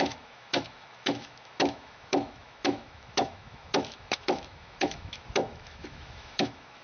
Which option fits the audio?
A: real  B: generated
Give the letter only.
B